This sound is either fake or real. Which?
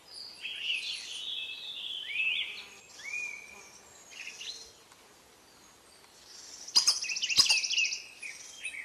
real